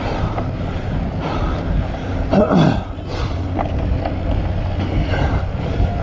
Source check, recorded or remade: recorded